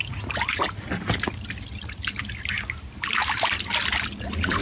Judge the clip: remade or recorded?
recorded